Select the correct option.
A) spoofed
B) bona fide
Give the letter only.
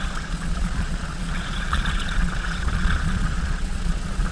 A